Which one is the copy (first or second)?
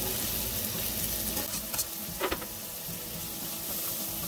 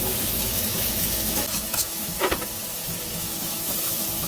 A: second